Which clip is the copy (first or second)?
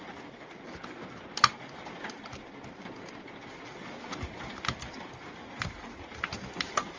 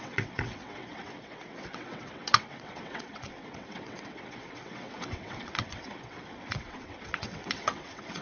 second